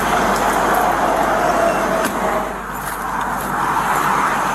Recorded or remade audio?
recorded